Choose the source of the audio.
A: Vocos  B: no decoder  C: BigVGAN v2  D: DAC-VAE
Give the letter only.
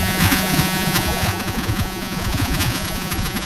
A